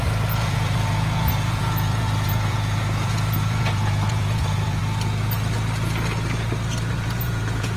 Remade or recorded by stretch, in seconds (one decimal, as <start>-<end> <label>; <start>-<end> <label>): 0.0-4.8 remade; 4.8-6.9 recorded; 6.9-7.8 remade